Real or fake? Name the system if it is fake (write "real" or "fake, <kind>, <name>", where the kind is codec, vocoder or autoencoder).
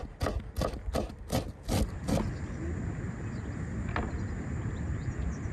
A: real